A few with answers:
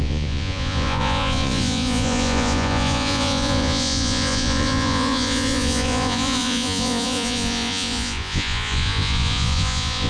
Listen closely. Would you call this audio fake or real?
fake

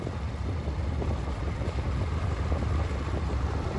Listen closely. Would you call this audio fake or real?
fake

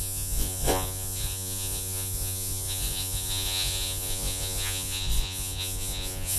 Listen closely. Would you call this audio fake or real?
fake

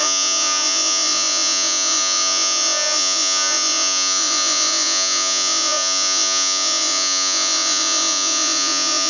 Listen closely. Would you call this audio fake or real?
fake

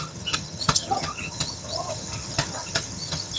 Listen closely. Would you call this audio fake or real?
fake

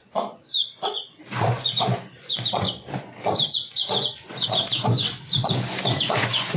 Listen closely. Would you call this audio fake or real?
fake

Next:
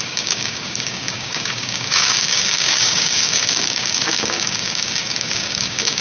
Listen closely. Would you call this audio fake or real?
fake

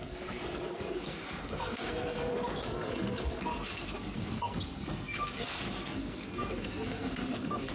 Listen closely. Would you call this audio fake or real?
fake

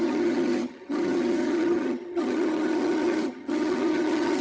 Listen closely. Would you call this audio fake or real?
fake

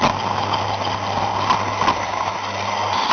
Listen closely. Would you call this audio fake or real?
real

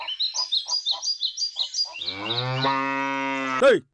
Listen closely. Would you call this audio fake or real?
real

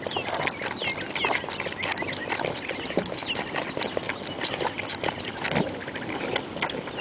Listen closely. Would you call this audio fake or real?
real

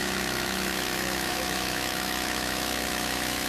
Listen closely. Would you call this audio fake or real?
fake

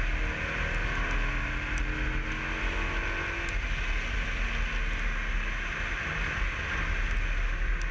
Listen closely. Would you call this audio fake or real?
real